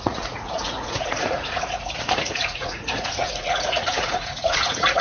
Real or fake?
fake